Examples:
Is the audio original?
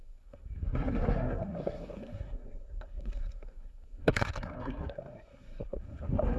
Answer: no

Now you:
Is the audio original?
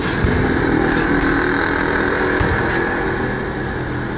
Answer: yes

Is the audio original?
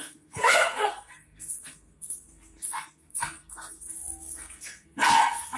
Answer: no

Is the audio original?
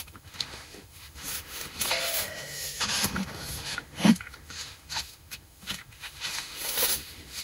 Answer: no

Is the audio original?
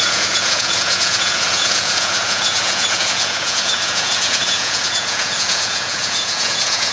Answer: no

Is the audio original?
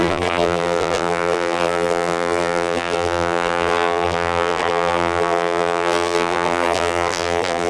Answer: no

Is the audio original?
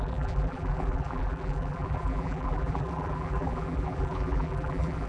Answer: no